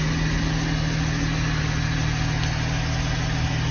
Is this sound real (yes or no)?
yes